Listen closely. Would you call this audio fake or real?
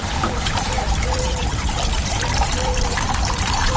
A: fake